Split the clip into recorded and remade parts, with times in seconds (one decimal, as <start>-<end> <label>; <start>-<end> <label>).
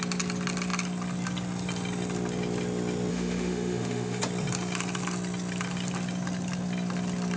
0.0-3.1 recorded; 3.1-4.2 remade; 4.2-7.4 recorded